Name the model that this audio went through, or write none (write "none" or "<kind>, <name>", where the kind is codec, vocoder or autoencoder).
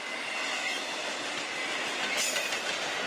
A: none